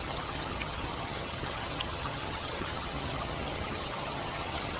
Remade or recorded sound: remade